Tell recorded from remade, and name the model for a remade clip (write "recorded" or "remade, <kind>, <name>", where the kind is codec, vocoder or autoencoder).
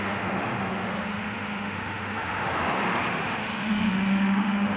remade, autoencoder, DAC-VAE